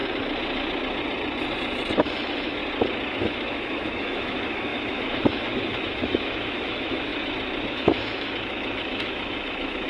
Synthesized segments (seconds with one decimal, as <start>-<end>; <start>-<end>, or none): 2.0-2.6; 3.2-7.1; 7.7-9.9